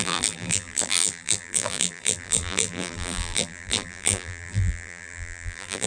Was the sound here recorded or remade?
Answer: remade